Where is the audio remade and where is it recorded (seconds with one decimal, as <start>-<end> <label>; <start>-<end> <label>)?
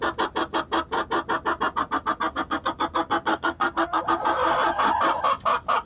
0.0-3.3 recorded; 3.3-4.0 remade; 4.0-5.9 recorded